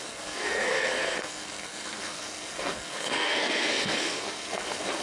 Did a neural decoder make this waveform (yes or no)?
yes